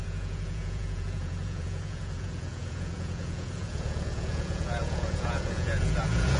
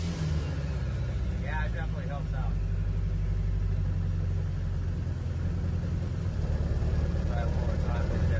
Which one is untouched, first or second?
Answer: second